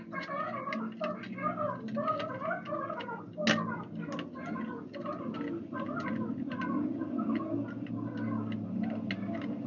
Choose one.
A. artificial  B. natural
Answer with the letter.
B